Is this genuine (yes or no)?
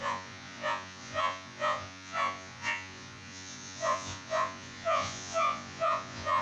no